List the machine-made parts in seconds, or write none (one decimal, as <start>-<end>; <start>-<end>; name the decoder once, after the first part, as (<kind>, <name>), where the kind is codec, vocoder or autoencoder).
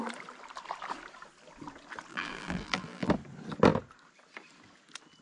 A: 2.1-3.1 (vocoder, BigVGAN v2)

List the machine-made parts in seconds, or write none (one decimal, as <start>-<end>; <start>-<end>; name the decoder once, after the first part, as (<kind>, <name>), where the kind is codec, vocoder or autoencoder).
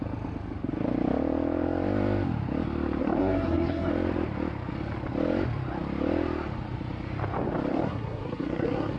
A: 3.0-3.9 (codec, SNAC); 7.7-9.0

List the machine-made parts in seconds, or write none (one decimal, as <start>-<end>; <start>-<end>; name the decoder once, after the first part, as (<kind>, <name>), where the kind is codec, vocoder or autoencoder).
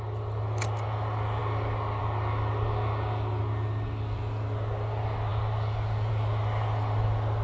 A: none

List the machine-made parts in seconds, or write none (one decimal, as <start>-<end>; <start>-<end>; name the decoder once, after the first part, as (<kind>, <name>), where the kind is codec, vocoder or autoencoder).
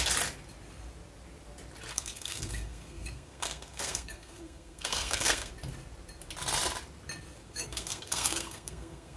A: 1.9-5.5 (codec, SNAC); 7.4-9.2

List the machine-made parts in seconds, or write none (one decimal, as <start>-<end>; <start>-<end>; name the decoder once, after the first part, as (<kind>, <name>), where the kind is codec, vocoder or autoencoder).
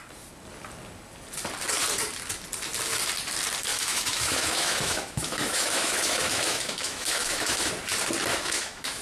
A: 3.7-7.7 (autoencoder, DAC-VAE); 8.3-9.0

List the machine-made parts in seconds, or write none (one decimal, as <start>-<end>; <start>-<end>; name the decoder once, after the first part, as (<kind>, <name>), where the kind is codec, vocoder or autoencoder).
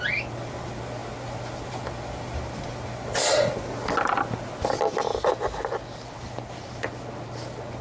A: none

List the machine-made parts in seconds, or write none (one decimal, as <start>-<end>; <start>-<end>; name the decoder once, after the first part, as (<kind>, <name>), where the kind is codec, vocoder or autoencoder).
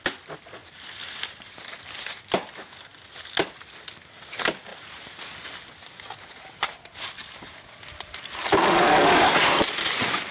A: none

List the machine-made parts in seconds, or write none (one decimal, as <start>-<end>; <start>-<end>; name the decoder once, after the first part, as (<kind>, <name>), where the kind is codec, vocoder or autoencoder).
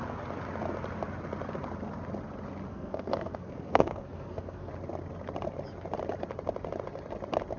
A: 2.7-4.7 (codec, SNAC)